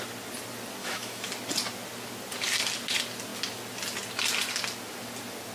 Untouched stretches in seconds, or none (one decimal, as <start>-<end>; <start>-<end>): 0.0-0.8; 1.3-5.5